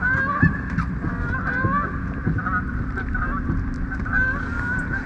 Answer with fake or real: real